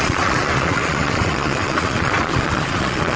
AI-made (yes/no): yes